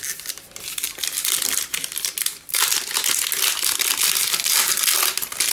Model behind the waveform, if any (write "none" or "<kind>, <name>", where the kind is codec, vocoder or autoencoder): none